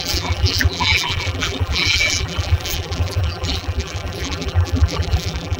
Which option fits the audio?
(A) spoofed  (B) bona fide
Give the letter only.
A